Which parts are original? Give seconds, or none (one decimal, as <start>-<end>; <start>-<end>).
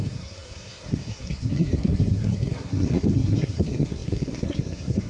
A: none